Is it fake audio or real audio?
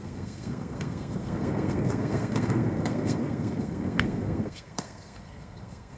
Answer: fake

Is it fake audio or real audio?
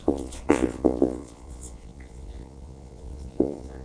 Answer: fake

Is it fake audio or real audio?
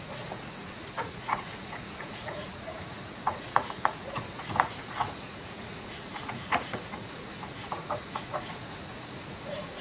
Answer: fake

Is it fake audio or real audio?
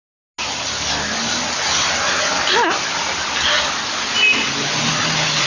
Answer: real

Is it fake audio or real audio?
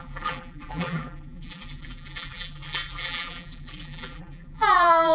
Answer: fake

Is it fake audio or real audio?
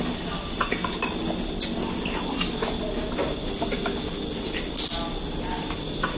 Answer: real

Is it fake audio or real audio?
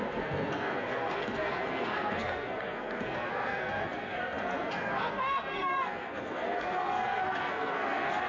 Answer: fake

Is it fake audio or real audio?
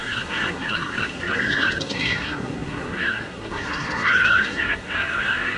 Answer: fake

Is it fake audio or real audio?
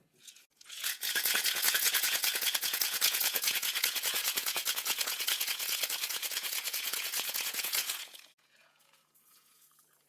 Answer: fake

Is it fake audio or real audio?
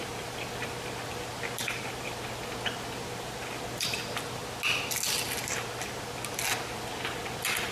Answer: real